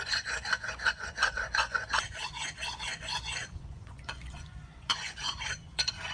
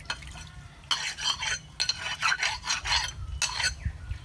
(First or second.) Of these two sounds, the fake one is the first